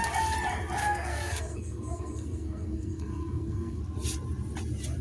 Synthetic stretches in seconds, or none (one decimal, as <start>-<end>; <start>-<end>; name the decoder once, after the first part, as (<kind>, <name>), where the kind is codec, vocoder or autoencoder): 0.8-3.8 (codec, SNAC)